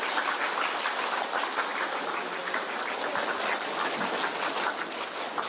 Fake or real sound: real